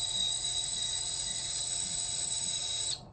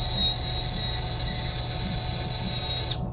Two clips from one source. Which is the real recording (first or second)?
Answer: second